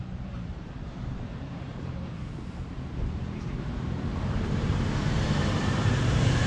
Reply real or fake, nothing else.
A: fake